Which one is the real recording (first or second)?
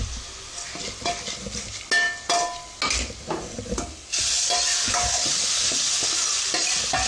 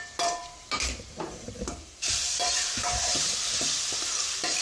first